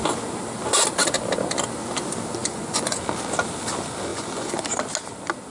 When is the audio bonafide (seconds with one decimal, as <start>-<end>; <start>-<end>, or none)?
0.0-2.4; 3.0-4.1; 4.6-5.5